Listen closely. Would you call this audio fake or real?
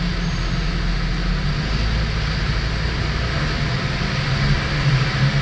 real